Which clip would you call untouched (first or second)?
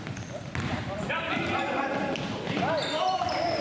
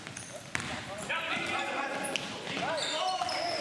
second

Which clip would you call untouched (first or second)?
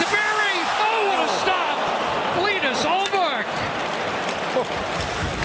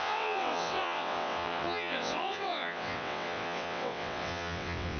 first